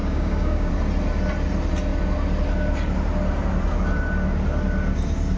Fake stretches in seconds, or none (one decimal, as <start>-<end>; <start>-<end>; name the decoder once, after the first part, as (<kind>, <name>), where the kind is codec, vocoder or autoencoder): 0.0-0.7 (codec, DAC)